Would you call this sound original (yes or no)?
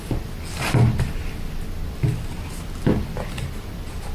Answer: yes